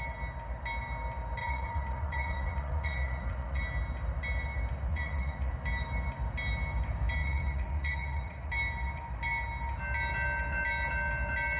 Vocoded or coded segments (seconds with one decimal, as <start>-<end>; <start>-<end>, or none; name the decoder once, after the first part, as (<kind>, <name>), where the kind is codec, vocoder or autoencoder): 1.4-3.6 (vocoder, Vocos); 4.9-5.5; 7.2-8.5